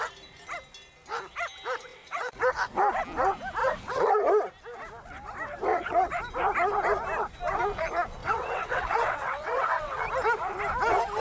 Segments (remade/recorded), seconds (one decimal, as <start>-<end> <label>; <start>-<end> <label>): 0.0-1.9 recorded; 1.9-2.5 remade; 2.5-3.6 recorded; 3.6-4.1 remade; 4.1-5.7 recorded; 5.7-6.2 remade; 6.2-8.2 recorded; 8.2-10.0 remade; 10.0-11.2 recorded